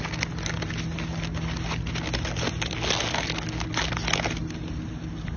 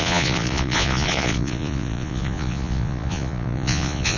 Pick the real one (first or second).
first